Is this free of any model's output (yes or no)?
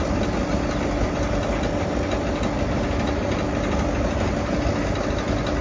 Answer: yes